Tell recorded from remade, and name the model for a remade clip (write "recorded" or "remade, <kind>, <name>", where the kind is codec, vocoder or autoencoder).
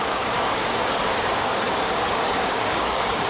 remade, codec, DAC